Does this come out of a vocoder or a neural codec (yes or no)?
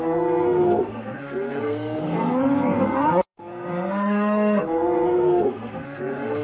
yes